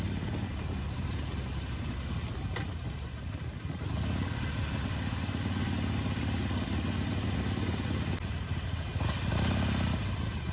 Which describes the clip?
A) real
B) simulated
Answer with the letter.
A